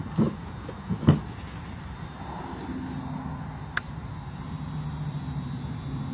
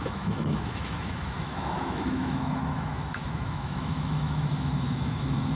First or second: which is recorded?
first